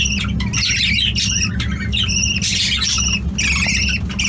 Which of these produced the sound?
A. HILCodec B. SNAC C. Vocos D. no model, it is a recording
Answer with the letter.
D